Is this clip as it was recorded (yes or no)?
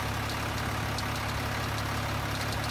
yes